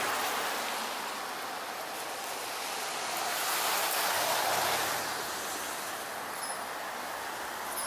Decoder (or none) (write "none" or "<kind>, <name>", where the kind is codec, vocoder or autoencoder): none